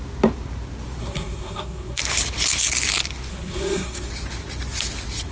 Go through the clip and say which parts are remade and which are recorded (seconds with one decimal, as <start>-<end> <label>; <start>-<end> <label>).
0.0-1.0 recorded; 1.0-2.0 remade; 2.0-3.3 recorded; 3.3-4.1 remade; 4.1-5.3 recorded